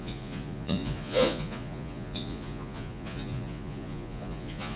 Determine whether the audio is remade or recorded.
remade